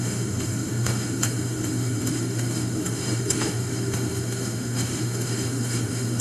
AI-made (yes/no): yes